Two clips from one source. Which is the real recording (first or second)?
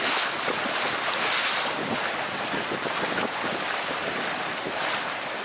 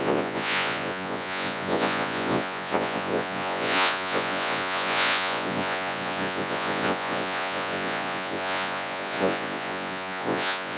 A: first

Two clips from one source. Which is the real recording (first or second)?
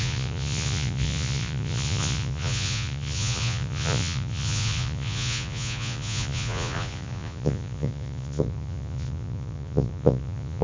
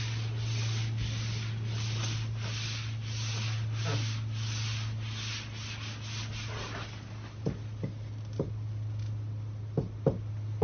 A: second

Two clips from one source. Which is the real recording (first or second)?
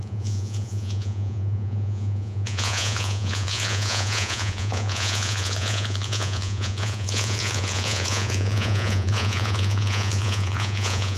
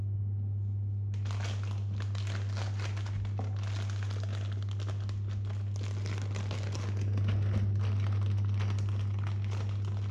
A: second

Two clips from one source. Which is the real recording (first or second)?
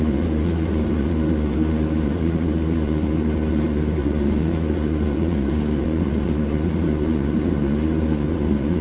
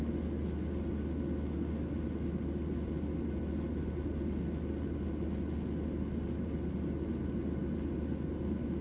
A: second